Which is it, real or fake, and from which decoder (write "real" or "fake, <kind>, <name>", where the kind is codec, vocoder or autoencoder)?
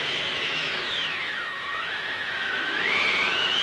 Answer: fake, autoencoder, DAC-VAE